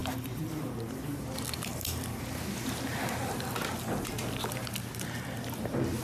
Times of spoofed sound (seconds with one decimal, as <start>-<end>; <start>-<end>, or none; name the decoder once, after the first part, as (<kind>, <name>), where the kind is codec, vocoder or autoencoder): 0.0-0.6 (vocoder, BigVGAN v2)